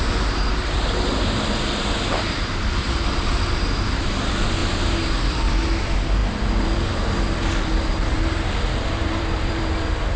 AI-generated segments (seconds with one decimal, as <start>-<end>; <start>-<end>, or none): 0.0-4.6; 5.4-10.2